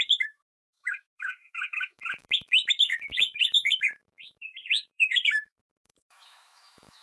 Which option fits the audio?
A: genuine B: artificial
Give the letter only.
B